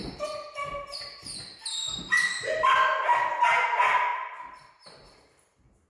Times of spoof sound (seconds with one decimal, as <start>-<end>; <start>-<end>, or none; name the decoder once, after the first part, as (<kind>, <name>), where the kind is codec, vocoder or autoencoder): 4.1-5.0 (vocoder, BigVGAN v2)